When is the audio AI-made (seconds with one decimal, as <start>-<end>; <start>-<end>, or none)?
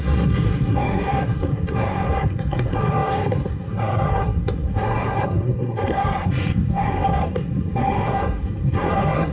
0.0-9.3